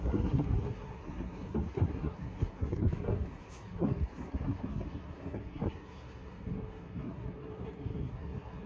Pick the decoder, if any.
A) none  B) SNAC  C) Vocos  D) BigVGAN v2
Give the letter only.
B